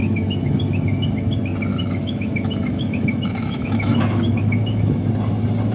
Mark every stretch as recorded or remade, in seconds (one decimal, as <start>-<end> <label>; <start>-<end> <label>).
0.0-0.6 remade; 0.6-1.7 recorded; 1.7-5.1 remade; 5.1-5.7 recorded